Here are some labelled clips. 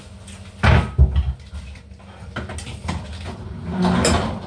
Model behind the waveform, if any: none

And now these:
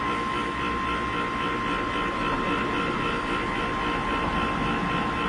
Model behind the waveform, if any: none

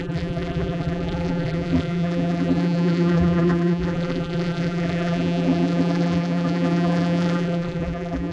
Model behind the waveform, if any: vocoder, BigVGAN v2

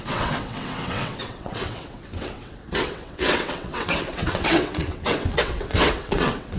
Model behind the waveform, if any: vocoder, WaveNeXt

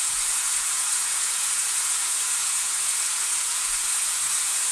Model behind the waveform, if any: vocoder, Vocos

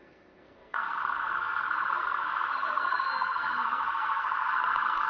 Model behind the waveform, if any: codec, SNAC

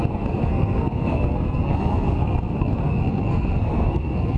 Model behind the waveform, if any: codec, SNAC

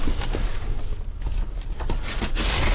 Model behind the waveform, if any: none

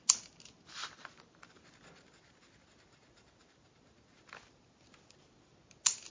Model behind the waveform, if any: none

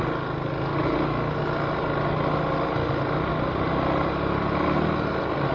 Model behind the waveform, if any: none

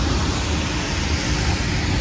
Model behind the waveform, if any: none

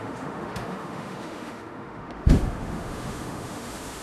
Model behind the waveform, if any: autoencoder, DAC-VAE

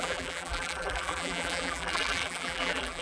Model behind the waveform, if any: vocoder, BigVGAN v2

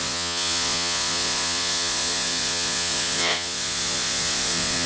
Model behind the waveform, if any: vocoder, Vocos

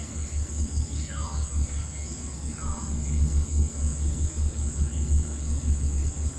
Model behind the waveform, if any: codec, SNAC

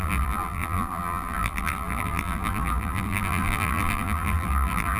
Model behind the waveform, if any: vocoder, BigVGAN v2